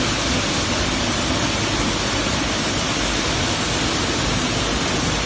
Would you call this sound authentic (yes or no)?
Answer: yes